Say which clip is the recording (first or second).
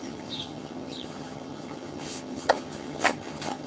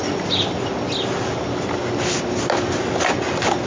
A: second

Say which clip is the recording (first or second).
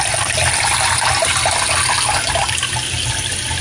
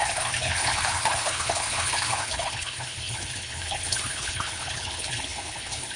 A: first